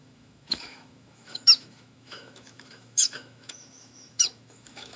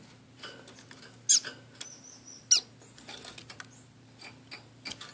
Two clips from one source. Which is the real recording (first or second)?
second